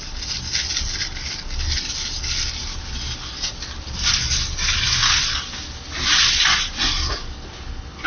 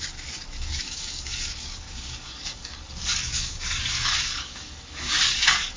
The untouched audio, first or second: first